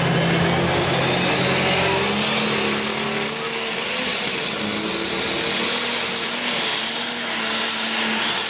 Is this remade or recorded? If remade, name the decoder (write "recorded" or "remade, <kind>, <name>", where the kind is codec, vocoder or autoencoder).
recorded